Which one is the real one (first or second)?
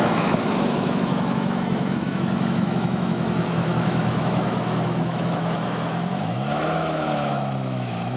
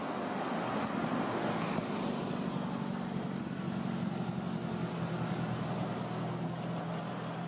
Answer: second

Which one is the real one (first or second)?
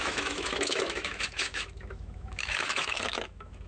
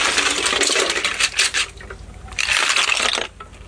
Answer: second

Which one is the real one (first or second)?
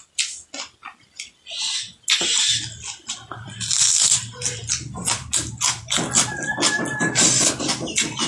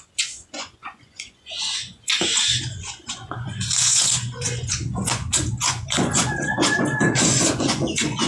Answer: first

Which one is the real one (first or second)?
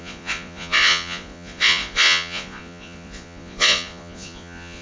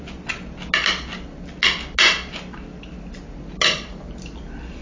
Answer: second